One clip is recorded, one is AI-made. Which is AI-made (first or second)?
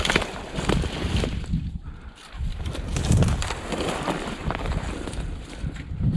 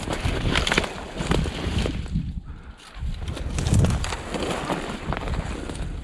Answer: first